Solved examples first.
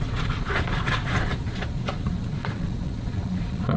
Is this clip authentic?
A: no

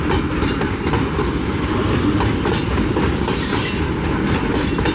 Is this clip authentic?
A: yes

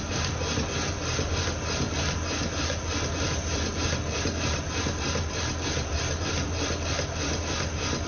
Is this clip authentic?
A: yes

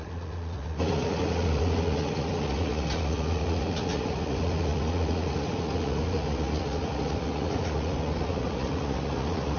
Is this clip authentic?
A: no